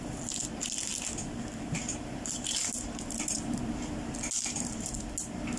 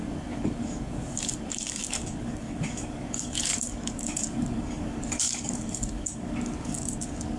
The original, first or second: first